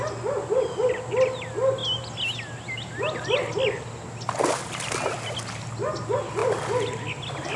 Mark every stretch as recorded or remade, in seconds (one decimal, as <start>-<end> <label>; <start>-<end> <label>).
0.0-7.6 recorded

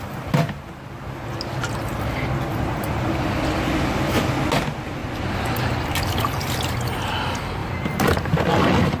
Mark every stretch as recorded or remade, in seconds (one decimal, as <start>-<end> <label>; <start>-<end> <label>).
0.0-2.5 recorded; 2.5-4.3 remade; 4.3-5.0 recorded; 5.0-6.5 remade; 6.5-7.6 recorded; 7.6-8.4 remade; 8.4-9.0 recorded

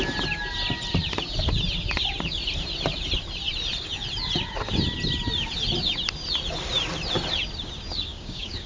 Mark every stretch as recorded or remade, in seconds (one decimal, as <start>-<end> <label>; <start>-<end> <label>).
0.0-8.1 recorded; 8.1-8.7 remade